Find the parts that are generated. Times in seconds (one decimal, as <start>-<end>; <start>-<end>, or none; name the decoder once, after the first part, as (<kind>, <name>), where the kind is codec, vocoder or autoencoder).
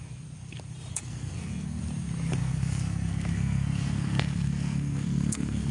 0.9-1.8 (codec, SNAC); 2.4-5.7